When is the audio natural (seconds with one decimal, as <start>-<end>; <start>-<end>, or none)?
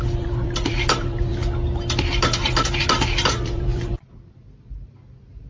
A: 1.4-2.8